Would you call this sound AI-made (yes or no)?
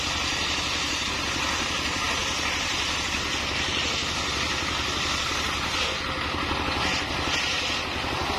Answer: no